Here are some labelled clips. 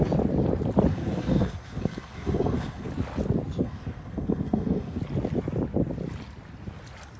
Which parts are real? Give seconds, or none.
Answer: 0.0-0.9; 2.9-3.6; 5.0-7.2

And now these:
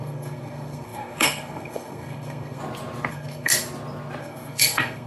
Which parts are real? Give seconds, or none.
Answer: 2.6-3.1; 3.5-4.2